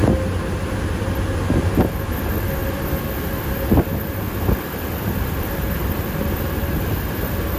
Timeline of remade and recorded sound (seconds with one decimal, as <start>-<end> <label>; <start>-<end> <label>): 0.0-2.6 recorded; 2.6-6.8 remade; 6.8-7.6 recorded